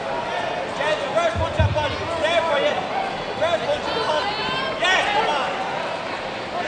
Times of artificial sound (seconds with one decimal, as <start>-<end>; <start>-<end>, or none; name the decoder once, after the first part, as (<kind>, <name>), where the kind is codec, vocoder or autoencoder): none